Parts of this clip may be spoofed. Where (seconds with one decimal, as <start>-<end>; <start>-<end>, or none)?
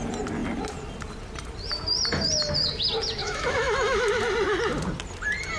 3.2-4.2